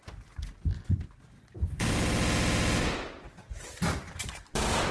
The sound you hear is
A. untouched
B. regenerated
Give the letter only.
A